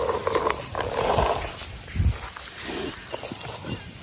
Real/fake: real